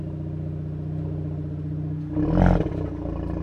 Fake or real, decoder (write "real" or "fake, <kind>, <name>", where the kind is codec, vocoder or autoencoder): real